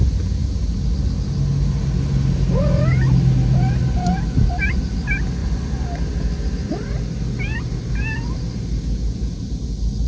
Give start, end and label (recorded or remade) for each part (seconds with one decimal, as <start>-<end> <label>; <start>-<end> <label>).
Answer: 0.0-10.1 recorded